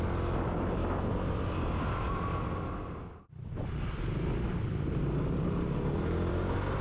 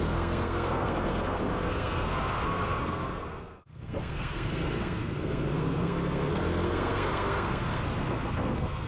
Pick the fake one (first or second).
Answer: second